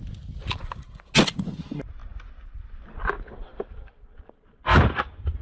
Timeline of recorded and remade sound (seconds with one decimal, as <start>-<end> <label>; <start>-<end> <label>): 0.0-5.4 recorded